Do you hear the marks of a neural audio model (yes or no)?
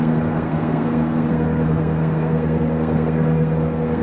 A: yes